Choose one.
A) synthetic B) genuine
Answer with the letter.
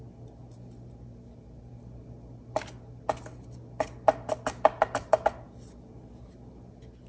B